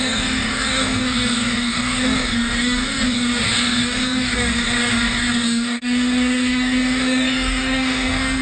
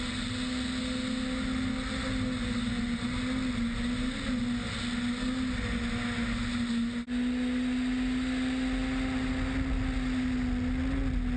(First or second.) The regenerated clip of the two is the first